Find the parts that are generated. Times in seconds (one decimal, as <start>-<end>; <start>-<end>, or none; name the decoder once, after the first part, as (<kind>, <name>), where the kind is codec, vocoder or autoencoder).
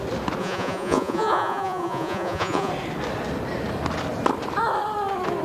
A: 0.4-2.7 (vocoder, Vocos)